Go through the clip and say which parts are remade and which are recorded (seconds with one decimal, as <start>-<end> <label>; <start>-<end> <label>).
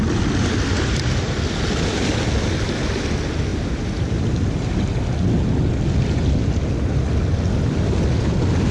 0.0-8.7 recorded